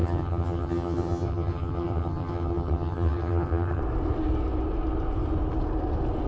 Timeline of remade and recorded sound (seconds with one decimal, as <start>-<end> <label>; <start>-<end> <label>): 0.0-3.8 remade; 3.8-6.3 recorded